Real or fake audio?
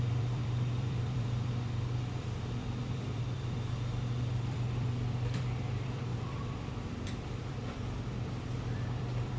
fake